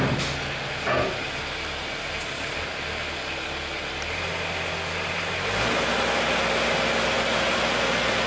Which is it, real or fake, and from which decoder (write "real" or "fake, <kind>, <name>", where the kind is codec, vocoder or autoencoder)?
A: real